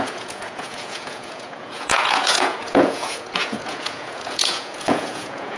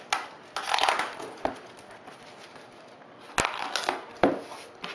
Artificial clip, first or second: first